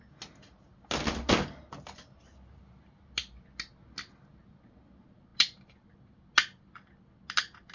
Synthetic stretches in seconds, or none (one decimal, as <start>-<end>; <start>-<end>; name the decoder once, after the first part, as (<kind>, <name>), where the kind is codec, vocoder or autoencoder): none